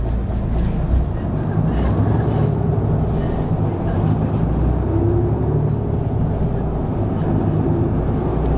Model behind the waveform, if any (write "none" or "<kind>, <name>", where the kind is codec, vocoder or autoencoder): none